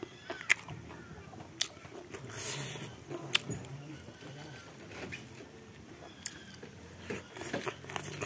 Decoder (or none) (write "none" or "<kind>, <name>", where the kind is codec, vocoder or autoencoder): none